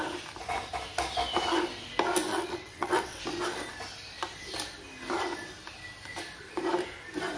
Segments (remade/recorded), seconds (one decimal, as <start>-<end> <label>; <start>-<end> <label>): 0.0-2.3 recorded; 2.3-3.2 remade; 3.2-7.4 recorded